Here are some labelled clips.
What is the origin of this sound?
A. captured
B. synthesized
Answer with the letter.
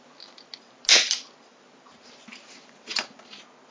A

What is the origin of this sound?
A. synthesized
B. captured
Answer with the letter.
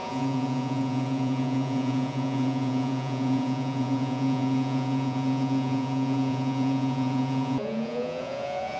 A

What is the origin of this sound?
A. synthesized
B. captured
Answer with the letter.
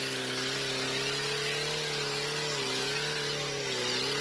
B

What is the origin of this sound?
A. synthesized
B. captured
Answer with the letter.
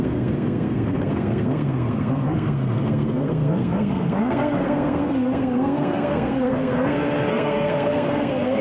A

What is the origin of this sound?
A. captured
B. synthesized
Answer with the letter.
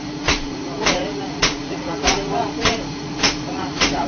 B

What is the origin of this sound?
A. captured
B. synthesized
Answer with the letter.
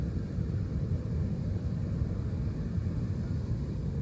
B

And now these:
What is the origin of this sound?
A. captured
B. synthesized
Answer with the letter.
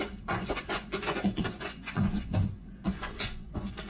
B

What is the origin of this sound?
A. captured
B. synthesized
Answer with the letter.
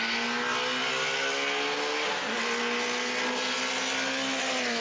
A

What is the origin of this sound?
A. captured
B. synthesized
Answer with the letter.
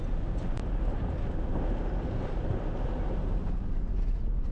A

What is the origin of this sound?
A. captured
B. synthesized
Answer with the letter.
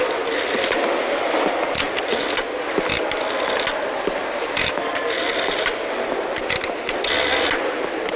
A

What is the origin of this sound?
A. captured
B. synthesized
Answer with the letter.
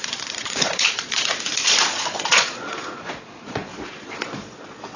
B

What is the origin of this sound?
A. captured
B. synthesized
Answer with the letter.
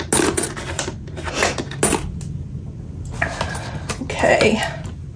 A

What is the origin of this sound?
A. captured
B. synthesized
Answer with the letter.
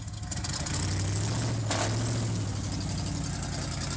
A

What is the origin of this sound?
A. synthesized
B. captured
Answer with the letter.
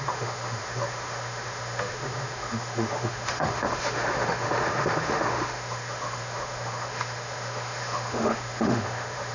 A